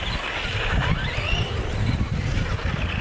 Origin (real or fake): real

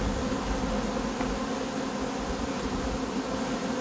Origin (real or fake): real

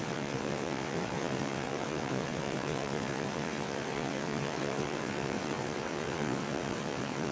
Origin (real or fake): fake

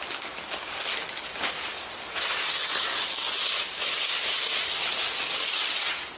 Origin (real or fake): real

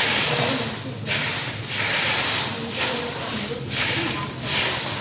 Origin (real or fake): real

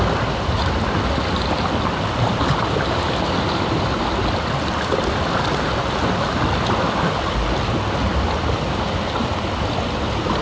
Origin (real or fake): real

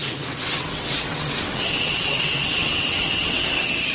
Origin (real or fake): fake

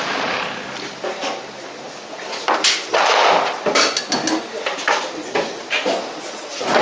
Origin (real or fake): real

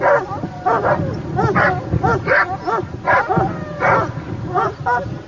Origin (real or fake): real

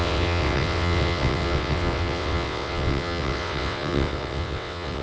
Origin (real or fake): fake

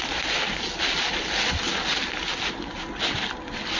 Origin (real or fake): real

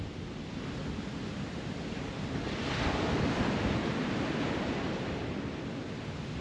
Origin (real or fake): real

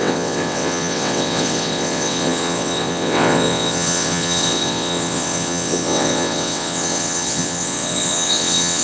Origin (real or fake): fake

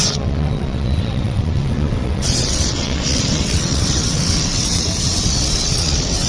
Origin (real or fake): fake